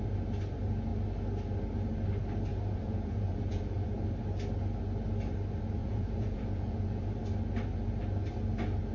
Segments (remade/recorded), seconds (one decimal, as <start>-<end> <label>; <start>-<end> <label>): 0.0-2.5 recorded; 2.5-4.1 remade; 4.1-5.8 recorded; 5.8-7.1 remade; 7.1-8.9 recorded